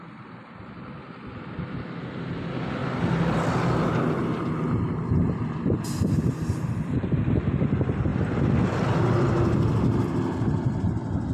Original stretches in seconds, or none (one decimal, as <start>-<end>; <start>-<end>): 0.0-11.3